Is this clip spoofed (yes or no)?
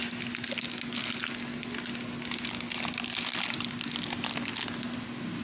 no